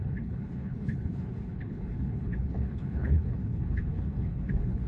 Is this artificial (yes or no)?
yes